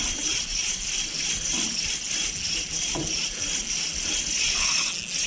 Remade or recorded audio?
recorded